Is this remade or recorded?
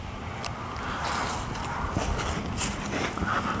recorded